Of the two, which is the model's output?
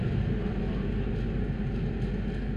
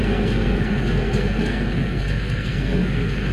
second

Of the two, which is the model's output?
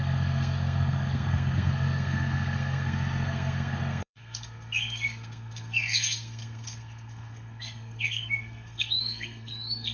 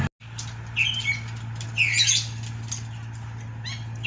first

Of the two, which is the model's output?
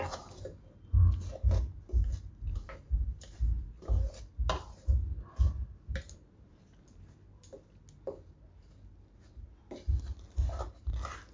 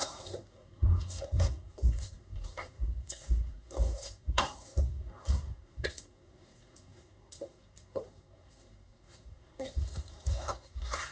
second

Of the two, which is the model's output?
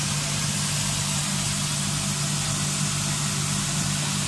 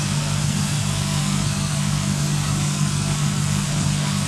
second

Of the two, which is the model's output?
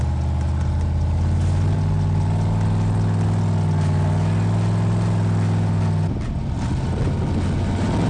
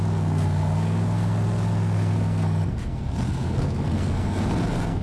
second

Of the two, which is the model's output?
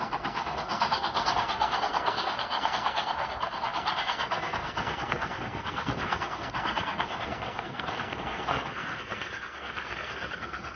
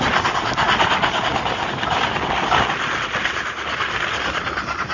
first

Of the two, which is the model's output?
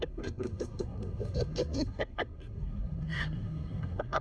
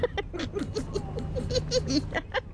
first